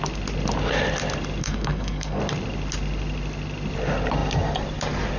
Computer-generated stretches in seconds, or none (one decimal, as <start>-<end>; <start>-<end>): 1.4-2.2